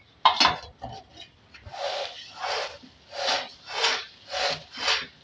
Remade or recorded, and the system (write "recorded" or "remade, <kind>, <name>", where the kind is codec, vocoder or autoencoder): recorded